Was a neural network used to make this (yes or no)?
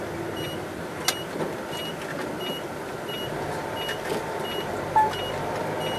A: no